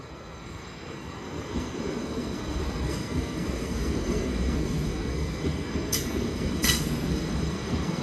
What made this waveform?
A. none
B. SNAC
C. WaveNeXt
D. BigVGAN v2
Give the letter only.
B